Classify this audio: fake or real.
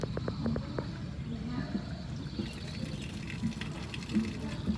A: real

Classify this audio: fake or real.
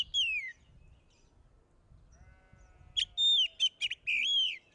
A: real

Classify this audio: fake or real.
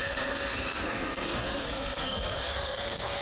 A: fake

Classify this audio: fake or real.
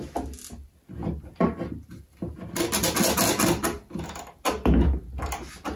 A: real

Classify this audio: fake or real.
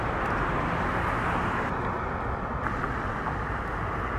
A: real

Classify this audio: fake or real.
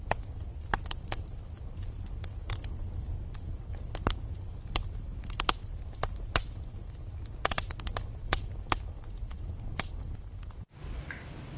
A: real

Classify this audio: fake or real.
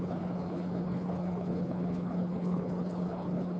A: fake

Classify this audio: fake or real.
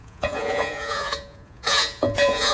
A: fake